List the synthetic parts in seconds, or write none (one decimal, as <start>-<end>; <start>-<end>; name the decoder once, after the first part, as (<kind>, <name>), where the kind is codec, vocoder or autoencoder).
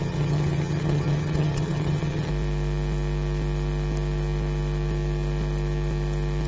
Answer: 0.0-2.3 (vocoder, HiFi-GAN)